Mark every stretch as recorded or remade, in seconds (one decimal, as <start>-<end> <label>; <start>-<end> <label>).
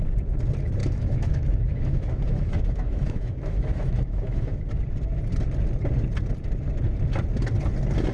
0.0-0.8 recorded; 0.8-4.6 remade; 4.6-8.1 recorded